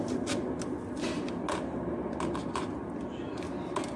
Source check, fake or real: real